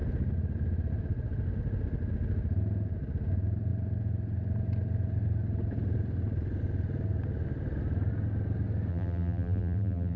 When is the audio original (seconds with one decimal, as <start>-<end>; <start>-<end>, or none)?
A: 0.0-8.9